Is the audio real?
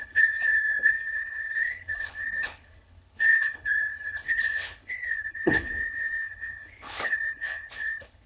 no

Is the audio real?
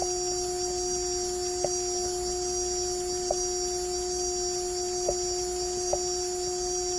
yes